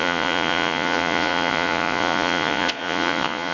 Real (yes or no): no